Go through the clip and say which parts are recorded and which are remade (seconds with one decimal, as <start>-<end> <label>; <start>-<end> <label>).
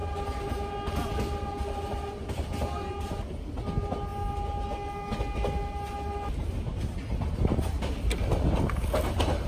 0.0-9.5 recorded